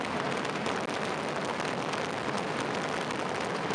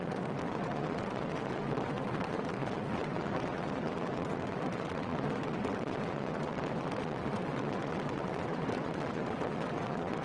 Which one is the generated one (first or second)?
second